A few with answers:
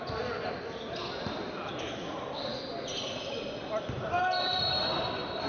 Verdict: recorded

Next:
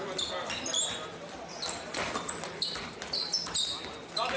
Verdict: recorded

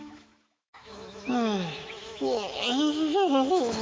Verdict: remade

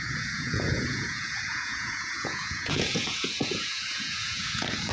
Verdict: remade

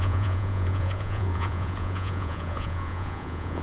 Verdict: remade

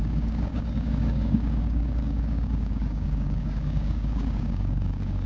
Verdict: remade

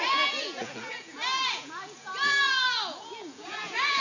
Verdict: remade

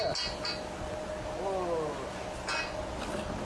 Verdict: recorded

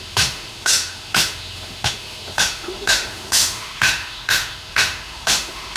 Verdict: remade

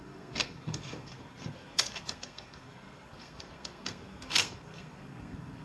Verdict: remade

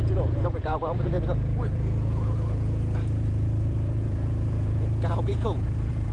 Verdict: remade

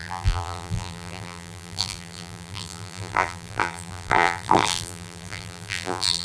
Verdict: remade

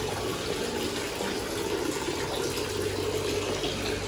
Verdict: recorded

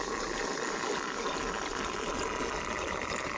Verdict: recorded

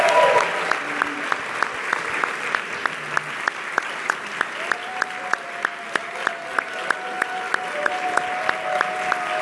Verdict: recorded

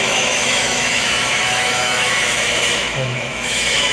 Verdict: remade